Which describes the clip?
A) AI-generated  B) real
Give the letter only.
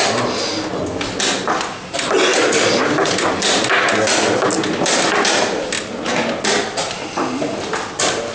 B